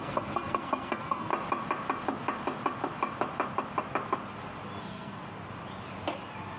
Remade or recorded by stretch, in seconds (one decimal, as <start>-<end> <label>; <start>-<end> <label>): 0.0-1.3 remade; 1.3-4.8 recorded; 4.8-5.2 remade; 5.2-6.6 recorded